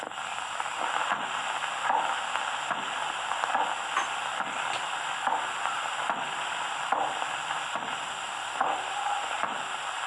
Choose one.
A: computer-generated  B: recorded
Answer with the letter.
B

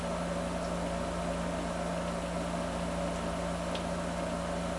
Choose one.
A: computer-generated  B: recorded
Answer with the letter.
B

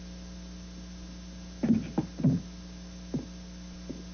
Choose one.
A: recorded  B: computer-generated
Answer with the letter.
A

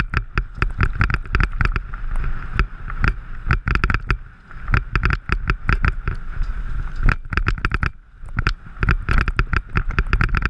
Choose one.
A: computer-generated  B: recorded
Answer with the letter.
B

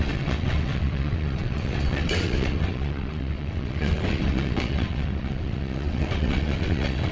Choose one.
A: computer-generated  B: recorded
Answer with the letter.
A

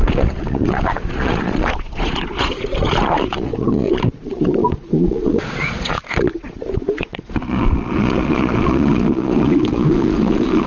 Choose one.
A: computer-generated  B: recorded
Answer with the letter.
A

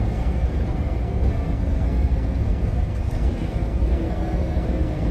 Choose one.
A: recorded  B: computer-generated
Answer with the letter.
B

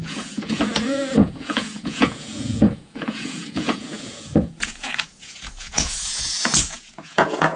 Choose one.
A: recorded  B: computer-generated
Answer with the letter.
B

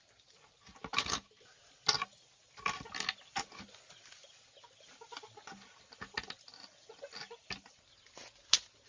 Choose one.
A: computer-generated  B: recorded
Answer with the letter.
B